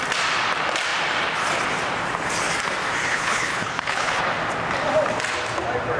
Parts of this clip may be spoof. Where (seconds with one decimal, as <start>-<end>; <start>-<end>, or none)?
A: 3.0-4.2